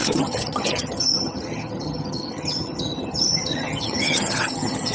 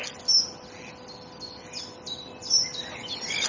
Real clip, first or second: second